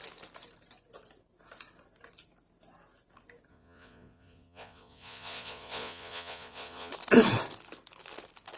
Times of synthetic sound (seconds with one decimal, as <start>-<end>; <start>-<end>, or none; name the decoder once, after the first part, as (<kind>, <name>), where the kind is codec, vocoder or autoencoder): 3.5-6.9 (vocoder, Vocos)